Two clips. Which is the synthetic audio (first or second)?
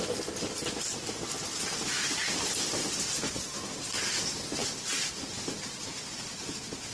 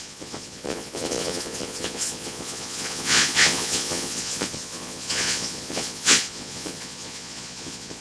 second